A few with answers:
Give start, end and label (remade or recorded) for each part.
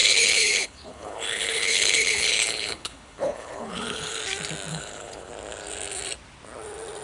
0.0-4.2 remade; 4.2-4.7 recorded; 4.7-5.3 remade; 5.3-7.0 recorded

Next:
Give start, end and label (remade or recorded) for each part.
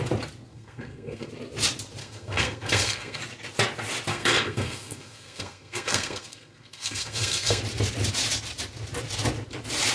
0.0-0.5 recorded; 0.5-1.3 remade; 1.3-2.0 recorded; 2.0-3.2 remade; 3.2-4.1 recorded; 4.1-7.6 remade; 7.6-9.9 recorded